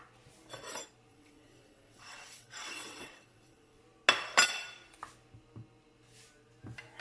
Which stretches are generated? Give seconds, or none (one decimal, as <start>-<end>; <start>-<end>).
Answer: 1.1-3.8